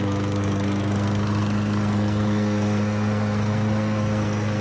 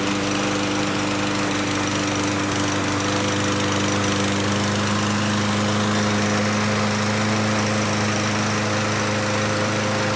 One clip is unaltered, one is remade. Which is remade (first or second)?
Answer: first